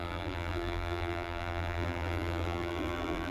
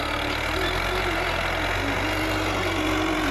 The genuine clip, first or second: second